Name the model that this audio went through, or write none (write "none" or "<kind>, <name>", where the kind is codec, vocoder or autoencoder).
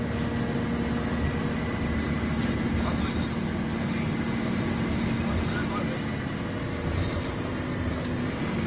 none